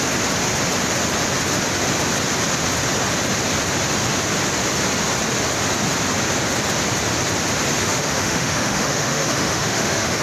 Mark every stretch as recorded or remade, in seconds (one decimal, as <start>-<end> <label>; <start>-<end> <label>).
0.0-7.8 recorded; 7.8-10.2 remade